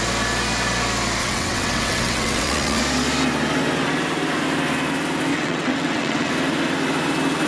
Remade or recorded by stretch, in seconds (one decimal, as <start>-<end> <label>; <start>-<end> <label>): 0.0-1.2 recorded; 1.2-2.8 remade; 2.8-5.3 recorded; 5.3-6.3 remade; 6.3-7.5 recorded